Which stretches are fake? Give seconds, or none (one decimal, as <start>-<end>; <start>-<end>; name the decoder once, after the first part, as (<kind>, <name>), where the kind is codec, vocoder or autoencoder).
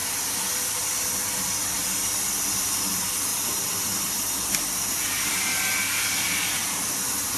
none